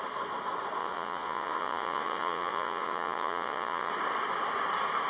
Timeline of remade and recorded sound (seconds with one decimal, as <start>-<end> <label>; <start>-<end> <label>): 0.0-0.8 recorded; 0.8-3.9 remade; 3.9-5.1 recorded

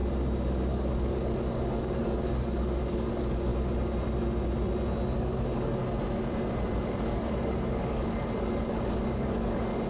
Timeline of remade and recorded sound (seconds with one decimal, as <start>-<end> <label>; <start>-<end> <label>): 0.0-0.7 recorded; 0.7-3.5 remade; 3.5-5.2 recorded; 5.2-5.8 remade; 5.8-6.8 recorded; 6.8-9.9 remade

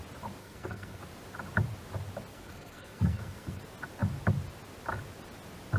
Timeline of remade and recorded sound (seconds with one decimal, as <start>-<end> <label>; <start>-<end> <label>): 0.0-0.4 recorded; 0.4-1.0 remade; 1.0-2.3 recorded; 2.3-3.6 remade; 3.6-5.8 recorded

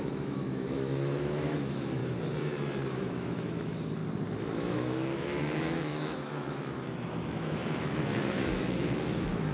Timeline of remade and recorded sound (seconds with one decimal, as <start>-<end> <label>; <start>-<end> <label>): 0.0-2.0 remade; 2.0-2.9 recorded; 2.9-4.0 remade; 4.0-4.6 recorded; 4.6-9.5 remade

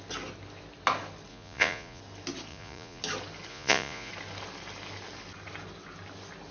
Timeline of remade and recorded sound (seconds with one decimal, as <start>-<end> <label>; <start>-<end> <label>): 0.0-1.3 recorded; 1.3-2.0 remade; 2.0-2.5 recorded; 2.5-3.0 remade; 3.0-3.5 recorded; 3.5-4.1 remade; 4.1-6.5 recorded

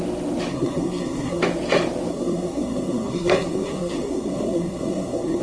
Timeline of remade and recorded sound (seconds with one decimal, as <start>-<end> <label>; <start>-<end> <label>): 0.0-0.5 recorded; 0.5-1.4 remade; 1.4-2.1 recorded; 2.1-5.4 remade

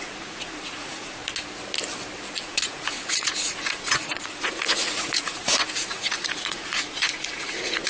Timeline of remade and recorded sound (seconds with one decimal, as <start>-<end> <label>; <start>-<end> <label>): 0.0-1.2 remade; 1.2-2.3 recorded; 2.3-7.9 remade